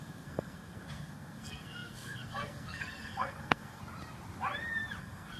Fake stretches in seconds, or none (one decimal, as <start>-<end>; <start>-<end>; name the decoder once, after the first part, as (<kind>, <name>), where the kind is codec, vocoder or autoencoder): 0.0-3.8 (codec, SNAC); 5.0-5.4